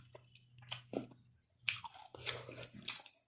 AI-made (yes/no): no